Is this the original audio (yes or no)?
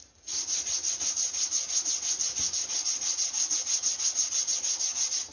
yes